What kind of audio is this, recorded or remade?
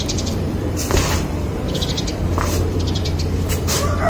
remade